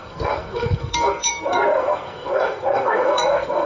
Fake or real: fake